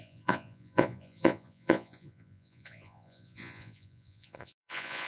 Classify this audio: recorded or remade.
remade